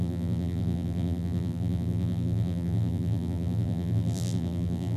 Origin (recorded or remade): remade